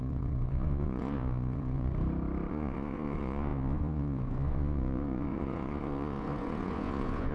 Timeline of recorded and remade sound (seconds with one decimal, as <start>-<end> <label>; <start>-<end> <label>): 0.0-1.9 remade; 1.9-2.5 recorded; 2.5-7.3 remade